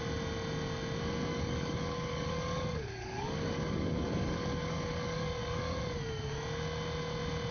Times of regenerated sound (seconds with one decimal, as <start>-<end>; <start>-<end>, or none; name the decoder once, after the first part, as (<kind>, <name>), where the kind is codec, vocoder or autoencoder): 1.3-5.8 (codec, DAC)